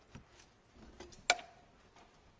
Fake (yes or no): no